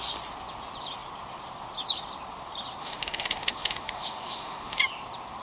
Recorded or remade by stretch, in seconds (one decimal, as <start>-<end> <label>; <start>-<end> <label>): 0.0-2.8 recorded; 2.8-4.8 remade; 4.8-5.4 recorded